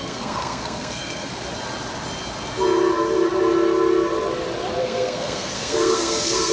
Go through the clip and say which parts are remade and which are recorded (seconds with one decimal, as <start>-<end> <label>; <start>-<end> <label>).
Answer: 0.0-1.3 remade; 1.3-4.8 recorded; 4.8-6.5 remade